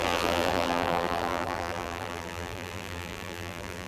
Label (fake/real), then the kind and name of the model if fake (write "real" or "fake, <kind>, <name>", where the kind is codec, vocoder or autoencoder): fake, vocoder, BigVGAN v2